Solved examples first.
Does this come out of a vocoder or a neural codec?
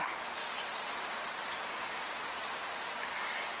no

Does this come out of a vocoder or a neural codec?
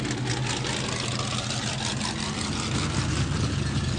no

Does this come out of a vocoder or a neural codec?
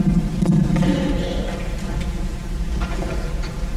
no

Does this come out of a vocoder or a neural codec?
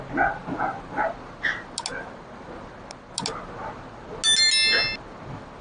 no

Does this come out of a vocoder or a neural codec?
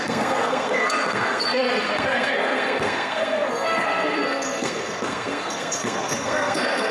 yes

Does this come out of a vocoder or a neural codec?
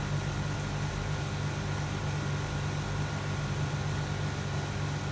no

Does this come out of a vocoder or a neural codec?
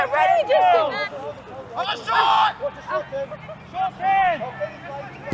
no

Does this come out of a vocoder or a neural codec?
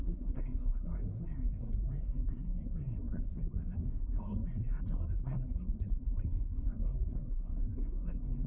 yes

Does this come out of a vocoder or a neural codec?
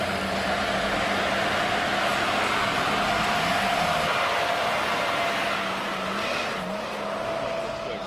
no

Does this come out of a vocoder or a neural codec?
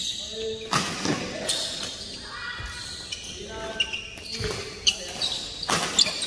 no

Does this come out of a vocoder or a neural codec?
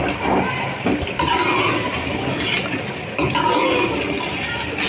no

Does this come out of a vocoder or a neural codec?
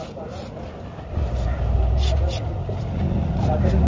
no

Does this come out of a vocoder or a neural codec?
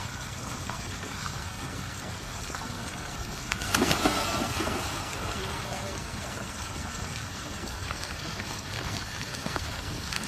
yes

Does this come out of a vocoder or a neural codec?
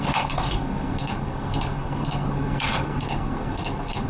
yes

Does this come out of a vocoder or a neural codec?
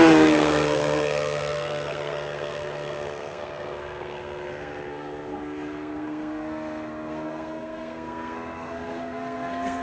yes